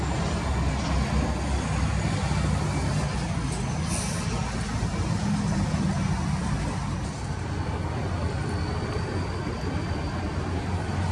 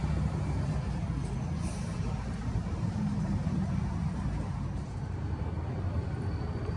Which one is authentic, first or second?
first